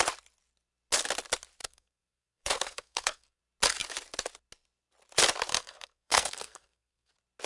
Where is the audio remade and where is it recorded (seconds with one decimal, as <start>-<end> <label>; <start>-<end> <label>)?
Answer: 0.0-1.6 recorded; 1.6-3.4 remade; 3.4-5.5 recorded; 5.5-7.1 remade; 7.1-7.5 recorded